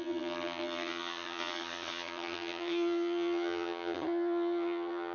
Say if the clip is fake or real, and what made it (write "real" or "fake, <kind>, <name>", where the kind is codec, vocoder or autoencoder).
fake, vocoder, HiFi-GAN